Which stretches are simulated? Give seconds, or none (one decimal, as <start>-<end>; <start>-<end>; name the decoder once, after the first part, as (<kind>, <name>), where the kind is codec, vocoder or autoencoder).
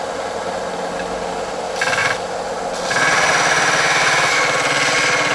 none